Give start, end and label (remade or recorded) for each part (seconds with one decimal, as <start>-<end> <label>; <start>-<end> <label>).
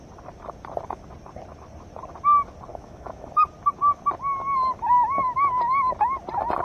0.0-2.7 recorded; 2.7-3.3 remade; 3.3-6.6 recorded